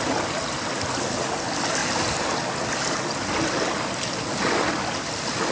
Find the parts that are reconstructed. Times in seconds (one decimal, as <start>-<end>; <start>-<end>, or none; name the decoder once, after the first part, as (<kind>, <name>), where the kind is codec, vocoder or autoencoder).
none